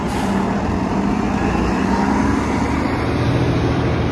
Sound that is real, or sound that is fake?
real